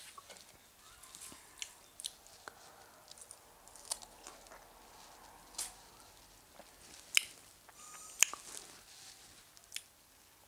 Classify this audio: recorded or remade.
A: recorded